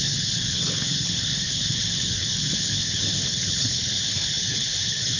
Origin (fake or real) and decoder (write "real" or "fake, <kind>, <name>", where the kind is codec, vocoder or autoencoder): fake, codec, HILCodec